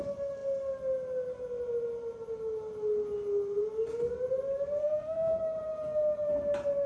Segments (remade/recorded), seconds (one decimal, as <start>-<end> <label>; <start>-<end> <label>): 0.0-4.8 recorded; 4.8-5.3 remade; 5.3-6.9 recorded